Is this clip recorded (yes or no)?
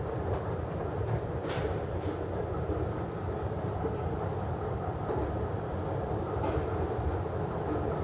yes